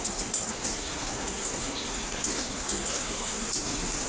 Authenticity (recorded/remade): remade